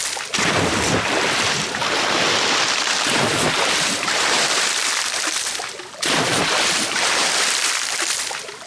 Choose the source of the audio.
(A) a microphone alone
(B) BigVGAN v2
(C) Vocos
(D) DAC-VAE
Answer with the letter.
B